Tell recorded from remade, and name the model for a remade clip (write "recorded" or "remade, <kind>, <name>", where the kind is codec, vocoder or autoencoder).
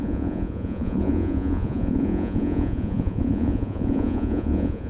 remade, vocoder, Vocos